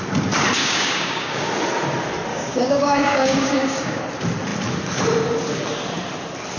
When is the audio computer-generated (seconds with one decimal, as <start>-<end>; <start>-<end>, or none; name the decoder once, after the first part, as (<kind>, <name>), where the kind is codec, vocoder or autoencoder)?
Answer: 0.6-1.5 (codec, DAC); 2.3-4.0